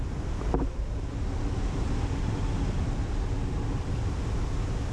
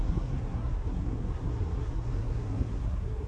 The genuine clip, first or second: first